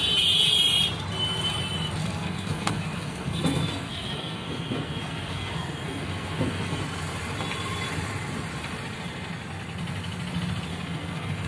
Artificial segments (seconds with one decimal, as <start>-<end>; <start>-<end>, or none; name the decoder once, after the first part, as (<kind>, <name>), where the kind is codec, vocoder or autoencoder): 2.0-6.8 (codec, SNAC); 10.7-11.5